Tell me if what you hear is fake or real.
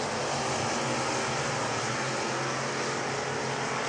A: real